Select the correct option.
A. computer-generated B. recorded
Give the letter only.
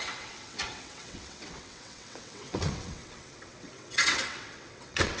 A